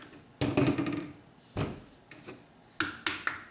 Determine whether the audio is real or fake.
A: real